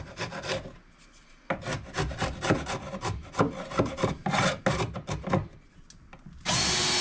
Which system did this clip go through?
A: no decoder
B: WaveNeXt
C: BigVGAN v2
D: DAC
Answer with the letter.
A